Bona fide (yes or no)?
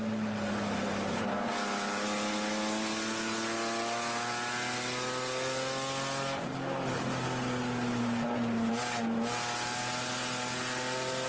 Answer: yes